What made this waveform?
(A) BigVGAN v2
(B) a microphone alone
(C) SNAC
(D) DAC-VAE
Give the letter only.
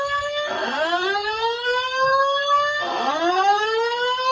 C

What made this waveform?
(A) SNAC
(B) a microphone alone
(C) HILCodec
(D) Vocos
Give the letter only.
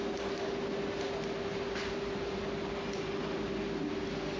B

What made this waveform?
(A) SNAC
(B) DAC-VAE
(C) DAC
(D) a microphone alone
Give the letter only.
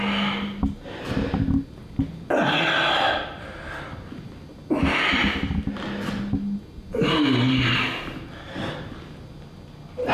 D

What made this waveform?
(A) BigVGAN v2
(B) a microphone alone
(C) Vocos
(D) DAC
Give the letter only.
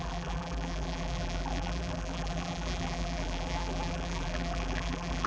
A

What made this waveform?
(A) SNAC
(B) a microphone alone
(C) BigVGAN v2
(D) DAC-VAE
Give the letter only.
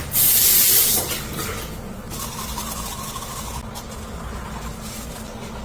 B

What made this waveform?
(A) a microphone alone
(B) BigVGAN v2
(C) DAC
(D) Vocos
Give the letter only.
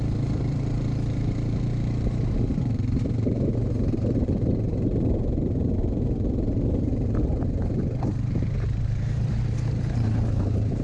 B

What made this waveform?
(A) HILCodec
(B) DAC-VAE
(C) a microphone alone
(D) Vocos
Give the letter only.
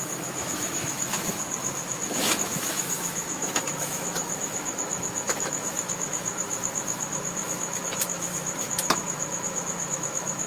B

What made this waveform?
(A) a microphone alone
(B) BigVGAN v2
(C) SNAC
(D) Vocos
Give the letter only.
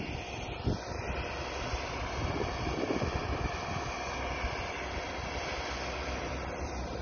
A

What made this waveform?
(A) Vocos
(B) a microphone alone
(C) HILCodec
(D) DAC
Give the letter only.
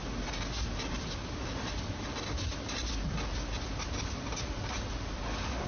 B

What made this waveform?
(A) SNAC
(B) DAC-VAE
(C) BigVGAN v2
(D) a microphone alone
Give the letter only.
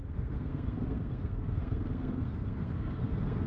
A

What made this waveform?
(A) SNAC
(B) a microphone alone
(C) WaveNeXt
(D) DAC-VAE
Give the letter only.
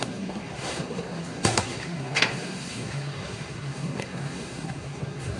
A